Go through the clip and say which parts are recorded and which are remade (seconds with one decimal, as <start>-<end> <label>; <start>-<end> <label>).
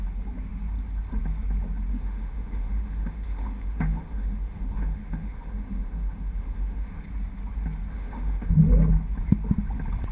0.0-1.9 recorded; 1.9-7.0 remade; 7.0-7.9 recorded; 7.9-8.5 remade; 8.5-10.1 recorded